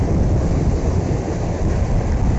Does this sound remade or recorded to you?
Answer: recorded